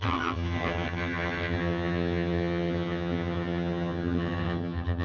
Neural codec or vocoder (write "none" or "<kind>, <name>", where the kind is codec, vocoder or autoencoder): vocoder, HiFi-GAN